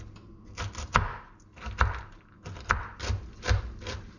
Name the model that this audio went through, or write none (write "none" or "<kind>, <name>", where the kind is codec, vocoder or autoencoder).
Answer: none